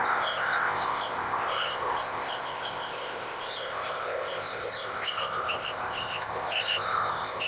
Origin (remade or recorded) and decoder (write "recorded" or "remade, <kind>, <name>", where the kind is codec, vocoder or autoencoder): remade, codec, ZipCodec